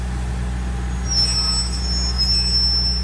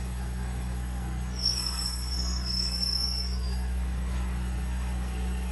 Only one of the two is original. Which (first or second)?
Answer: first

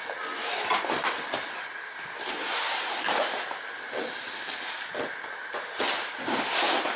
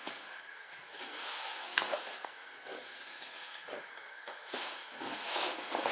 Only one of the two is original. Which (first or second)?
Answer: first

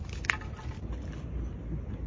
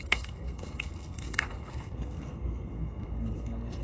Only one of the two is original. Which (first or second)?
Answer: first